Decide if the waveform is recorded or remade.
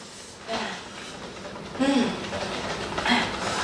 recorded